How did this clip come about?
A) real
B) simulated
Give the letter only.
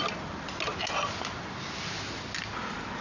A